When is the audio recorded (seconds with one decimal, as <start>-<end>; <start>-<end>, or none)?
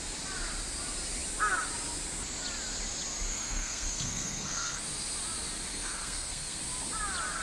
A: 0.0-3.3; 4.8-5.7; 6.6-7.4